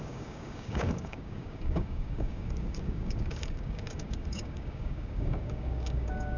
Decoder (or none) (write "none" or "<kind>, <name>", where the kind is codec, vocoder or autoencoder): codec, DAC